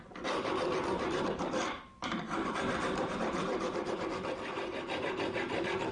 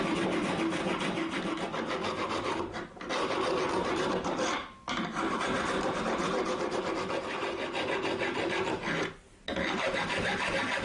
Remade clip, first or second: first